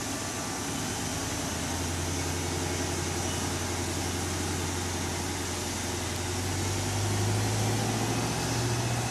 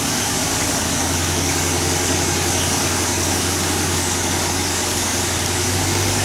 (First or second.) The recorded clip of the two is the first